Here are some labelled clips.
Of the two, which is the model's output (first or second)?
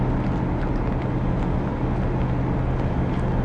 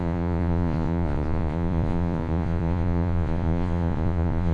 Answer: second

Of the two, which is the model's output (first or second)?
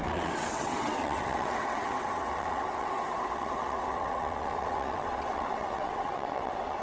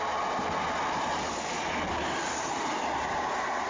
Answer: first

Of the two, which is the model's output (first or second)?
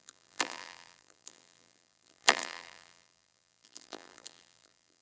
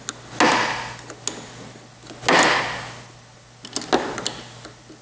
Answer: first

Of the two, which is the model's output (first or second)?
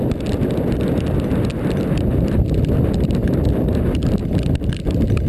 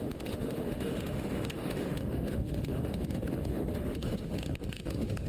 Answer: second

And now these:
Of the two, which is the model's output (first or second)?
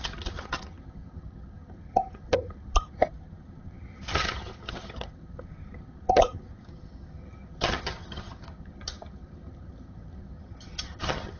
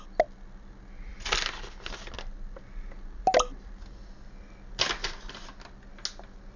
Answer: first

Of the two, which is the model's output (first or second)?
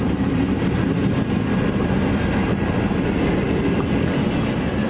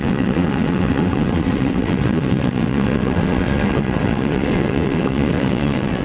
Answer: second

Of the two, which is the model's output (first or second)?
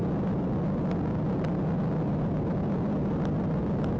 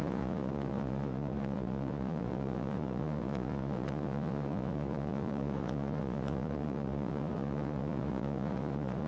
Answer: second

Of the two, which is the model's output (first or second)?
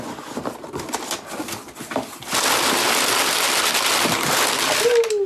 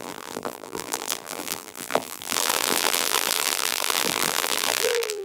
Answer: second